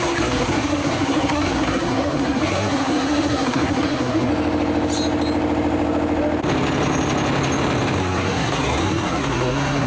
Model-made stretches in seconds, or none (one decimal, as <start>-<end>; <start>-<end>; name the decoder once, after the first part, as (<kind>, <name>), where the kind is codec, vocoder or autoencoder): 0.0-4.3 (codec, SNAC); 8.0-9.9